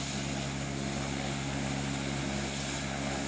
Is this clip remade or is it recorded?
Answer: recorded